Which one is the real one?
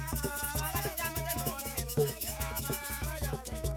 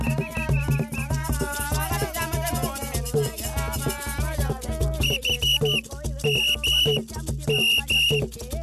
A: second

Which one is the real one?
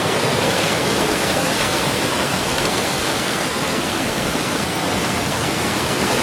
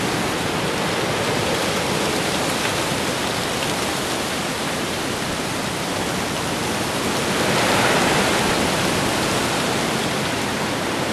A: second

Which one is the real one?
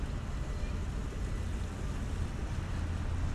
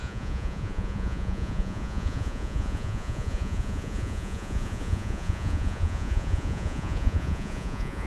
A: first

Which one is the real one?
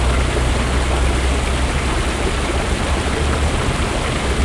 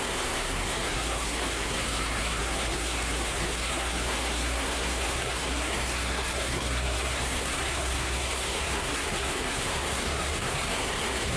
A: first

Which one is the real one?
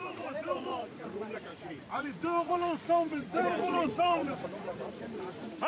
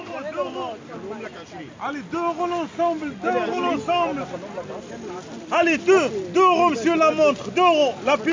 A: second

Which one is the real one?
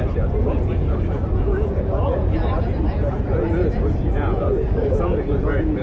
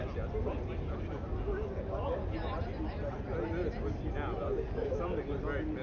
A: second